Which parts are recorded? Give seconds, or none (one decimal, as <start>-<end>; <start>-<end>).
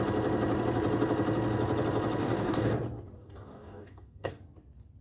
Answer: 0.0-2.2; 2.7-3.2; 4.4-5.0